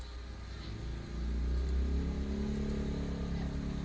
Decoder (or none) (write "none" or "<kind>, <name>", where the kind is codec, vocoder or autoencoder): none